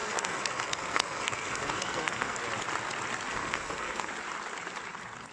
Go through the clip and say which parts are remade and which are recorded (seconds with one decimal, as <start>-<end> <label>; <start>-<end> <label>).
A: 0.0-2.4 remade; 2.4-3.3 recorded; 3.3-4.1 remade; 4.1-5.3 recorded